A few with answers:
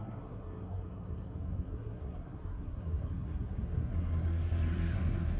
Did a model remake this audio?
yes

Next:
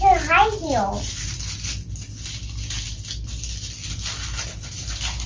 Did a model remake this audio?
no